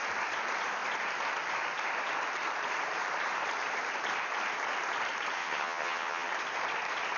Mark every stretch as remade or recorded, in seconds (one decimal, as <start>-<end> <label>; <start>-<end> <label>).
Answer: 0.0-5.4 recorded; 5.4-6.3 remade; 6.3-7.2 recorded